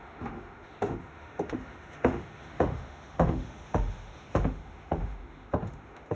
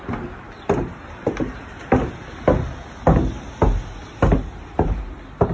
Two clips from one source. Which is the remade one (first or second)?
first